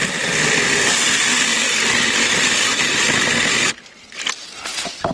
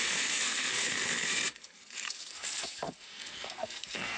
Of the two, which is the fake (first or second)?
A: second